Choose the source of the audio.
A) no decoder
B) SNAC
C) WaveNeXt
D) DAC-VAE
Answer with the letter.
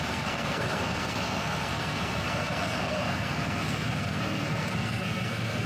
B